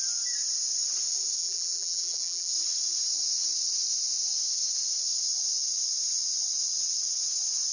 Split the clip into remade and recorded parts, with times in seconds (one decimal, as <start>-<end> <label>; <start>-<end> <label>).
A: 0.0-1.4 recorded; 1.4-2.5 remade; 2.5-7.7 recorded